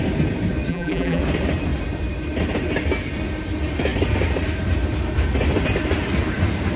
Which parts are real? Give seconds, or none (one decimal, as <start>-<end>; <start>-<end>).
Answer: 0.0-0.7; 1.2-6.8